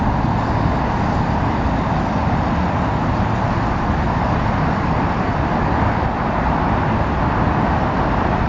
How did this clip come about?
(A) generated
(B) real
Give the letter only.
B